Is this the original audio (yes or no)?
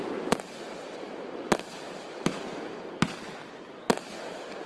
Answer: yes